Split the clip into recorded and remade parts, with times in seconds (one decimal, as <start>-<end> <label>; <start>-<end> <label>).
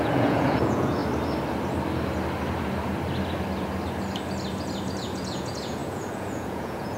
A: 0.0-1.0 remade; 1.0-5.0 recorded; 5.0-7.0 remade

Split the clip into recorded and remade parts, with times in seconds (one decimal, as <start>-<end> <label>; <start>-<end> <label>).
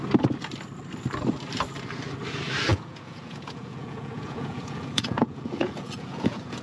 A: 0.0-2.7 recorded; 2.7-6.6 remade